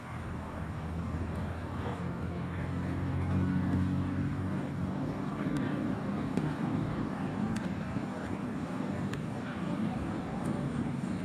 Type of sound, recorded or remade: remade